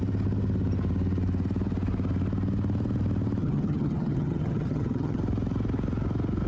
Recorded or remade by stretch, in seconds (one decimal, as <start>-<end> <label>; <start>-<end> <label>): 0.0-3.4 recorded; 3.4-5.2 remade; 5.2-6.5 recorded